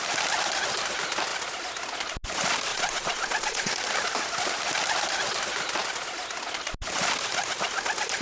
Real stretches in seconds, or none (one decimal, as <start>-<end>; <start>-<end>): 0.0-2.7; 3.7-8.2